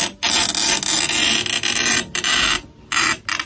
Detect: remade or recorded recorded